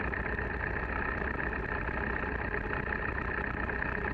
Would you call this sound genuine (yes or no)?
yes